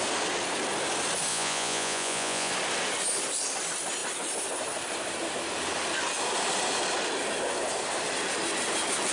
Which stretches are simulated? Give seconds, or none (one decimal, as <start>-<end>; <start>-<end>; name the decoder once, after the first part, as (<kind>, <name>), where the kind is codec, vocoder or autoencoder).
1.3-2.5 (vocoder, Vocos)